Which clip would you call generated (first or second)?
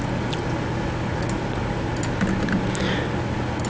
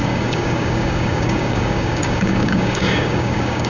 second